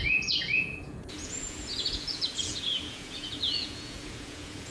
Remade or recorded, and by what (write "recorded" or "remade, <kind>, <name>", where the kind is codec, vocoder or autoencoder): remade, vocoder, Vocos